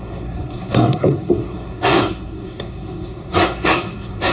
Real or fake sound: fake